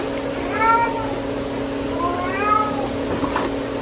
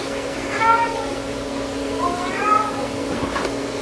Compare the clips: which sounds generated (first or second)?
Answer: second